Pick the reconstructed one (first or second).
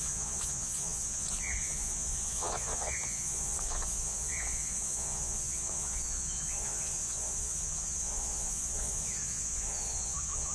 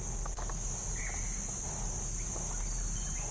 first